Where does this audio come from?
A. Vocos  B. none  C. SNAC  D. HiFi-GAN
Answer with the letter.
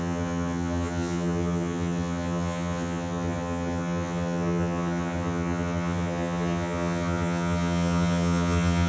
D